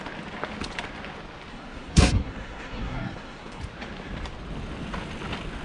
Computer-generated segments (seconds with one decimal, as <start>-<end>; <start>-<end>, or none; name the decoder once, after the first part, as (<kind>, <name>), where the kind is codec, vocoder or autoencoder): 1.5-3.6 (codec, SNAC)